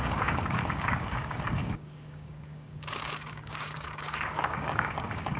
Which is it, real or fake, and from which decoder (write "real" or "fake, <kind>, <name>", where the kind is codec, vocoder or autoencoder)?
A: fake, codec, DAC